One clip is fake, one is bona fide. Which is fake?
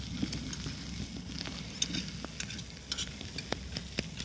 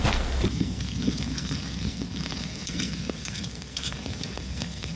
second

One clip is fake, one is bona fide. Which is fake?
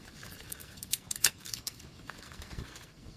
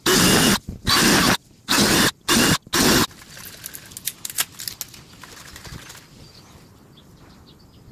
first